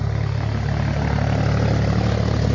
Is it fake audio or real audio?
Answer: real